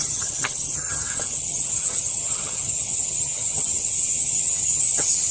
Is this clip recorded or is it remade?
remade